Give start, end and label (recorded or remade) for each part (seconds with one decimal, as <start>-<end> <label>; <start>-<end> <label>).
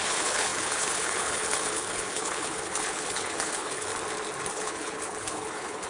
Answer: 0.0-3.9 remade; 3.9-4.5 recorded; 4.5-5.9 remade